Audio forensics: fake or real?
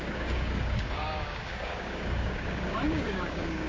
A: fake